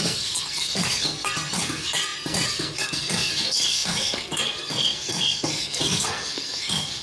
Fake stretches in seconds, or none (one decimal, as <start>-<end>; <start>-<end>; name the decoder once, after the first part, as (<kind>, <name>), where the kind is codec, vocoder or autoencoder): 0.0-7.0 (codec, SNAC)